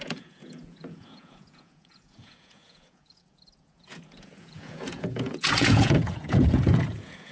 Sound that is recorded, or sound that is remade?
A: remade